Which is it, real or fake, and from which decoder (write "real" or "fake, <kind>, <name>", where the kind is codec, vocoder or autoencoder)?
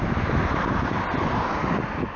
real